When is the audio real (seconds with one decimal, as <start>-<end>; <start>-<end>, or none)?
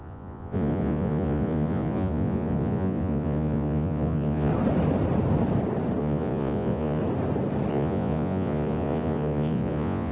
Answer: 4.5-6.0; 7.0-7.7